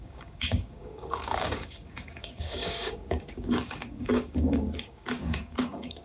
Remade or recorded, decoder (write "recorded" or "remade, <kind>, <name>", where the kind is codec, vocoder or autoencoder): remade, codec, DAC